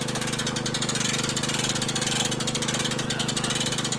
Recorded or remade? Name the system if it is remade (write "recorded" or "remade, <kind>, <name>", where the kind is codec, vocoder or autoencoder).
recorded